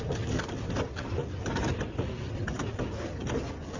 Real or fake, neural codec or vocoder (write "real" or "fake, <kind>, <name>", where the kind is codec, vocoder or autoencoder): real